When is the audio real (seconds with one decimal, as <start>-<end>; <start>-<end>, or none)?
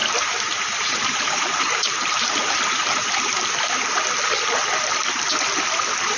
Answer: 3.7-6.2